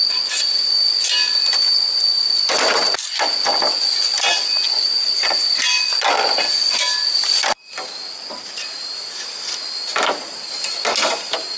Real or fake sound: real